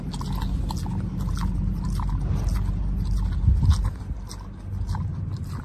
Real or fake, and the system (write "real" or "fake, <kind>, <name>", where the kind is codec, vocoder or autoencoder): real